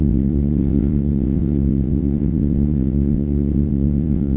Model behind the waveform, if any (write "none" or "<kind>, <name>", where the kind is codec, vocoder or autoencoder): vocoder, WaveNeXt